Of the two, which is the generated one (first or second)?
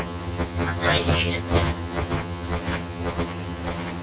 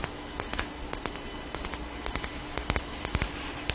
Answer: first